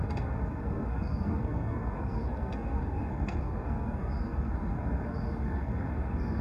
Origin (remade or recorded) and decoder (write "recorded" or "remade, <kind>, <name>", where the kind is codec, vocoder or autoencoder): remade, codec, SNAC